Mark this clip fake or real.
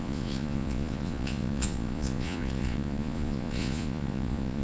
fake